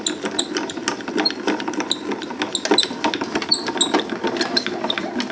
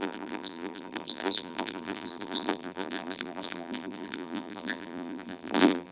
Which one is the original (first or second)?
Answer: first